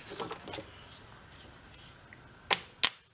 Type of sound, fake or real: real